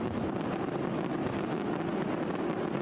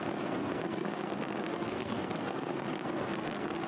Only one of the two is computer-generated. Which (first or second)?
second